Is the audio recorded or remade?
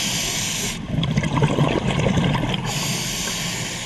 recorded